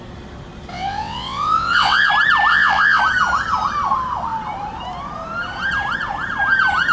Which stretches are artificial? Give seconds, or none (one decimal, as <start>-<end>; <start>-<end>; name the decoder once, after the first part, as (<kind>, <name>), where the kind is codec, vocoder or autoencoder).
0.7-2.1 (vocoder, WaveNeXt); 2.5-3.0